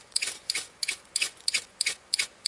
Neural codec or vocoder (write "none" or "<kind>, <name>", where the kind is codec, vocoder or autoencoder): vocoder, Vocos